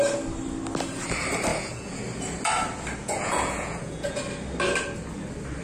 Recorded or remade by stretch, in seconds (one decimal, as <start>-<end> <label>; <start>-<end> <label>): 0.0-1.5 recorded; 1.5-2.0 remade; 2.0-3.0 recorded; 3.0-4.2 remade; 4.2-5.6 recorded